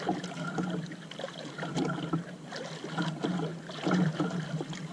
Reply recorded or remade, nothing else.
recorded